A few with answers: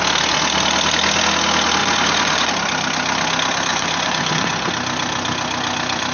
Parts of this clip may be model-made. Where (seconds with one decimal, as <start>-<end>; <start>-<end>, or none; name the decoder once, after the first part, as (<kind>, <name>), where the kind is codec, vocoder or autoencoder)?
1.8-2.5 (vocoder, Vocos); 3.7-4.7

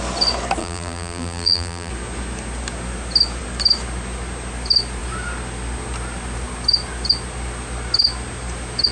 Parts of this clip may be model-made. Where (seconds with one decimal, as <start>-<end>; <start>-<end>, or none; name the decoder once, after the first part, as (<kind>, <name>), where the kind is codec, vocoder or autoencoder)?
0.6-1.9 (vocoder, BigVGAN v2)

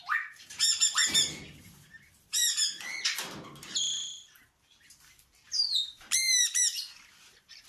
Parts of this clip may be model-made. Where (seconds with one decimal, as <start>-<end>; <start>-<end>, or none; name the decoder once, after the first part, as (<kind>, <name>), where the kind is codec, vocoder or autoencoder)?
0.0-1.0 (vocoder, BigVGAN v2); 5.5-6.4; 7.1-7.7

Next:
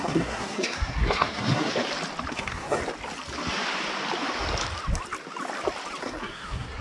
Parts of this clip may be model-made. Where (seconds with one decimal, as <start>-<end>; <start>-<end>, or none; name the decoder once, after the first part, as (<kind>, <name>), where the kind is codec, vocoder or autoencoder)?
0.0-1.7 (codec, SNAC); 2.3-2.8; 6.0-6.8

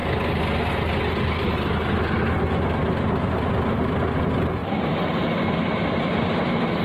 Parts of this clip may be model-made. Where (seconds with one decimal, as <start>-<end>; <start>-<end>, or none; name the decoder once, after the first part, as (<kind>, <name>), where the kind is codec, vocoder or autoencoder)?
4.6-5.2 (vocoder, BigVGAN v2)

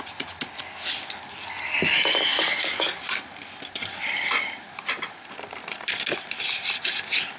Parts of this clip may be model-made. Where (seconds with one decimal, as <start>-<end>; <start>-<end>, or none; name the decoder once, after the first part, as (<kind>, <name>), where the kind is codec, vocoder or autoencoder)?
none